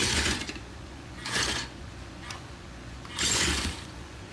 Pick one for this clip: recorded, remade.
remade